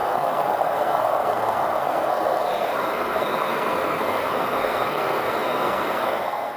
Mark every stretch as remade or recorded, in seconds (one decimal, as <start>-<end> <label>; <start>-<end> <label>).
0.0-6.6 remade